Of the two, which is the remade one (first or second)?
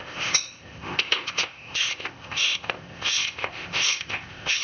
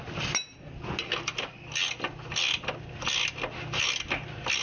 first